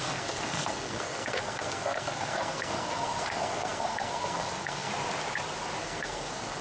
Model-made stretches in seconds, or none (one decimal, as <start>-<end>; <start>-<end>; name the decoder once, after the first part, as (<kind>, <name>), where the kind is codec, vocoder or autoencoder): 0.0-4.9 (codec, SNAC); 5.8-6.6